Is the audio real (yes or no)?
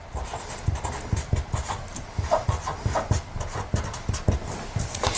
yes